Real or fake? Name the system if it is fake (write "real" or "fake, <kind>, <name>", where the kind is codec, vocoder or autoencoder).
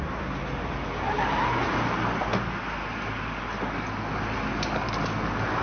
real